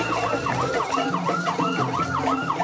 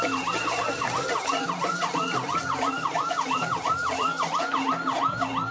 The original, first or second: first